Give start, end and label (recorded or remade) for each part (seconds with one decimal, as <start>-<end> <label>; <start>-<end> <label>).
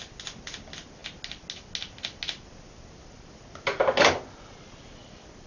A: 0.0-5.5 recorded